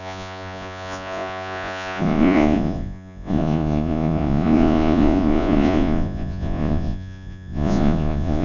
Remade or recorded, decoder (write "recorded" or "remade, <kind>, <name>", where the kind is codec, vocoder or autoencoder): remade, vocoder, Vocos